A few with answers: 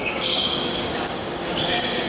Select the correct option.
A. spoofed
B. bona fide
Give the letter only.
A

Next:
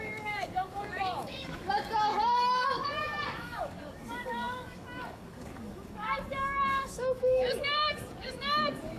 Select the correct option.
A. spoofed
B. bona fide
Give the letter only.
A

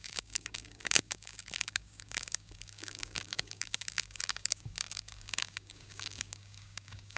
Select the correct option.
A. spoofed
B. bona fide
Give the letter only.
A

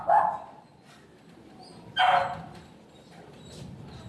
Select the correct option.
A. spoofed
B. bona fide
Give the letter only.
B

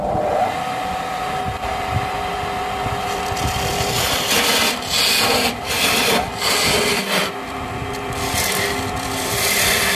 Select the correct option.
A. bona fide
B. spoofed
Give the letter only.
A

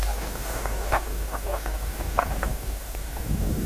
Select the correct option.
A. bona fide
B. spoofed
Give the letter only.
B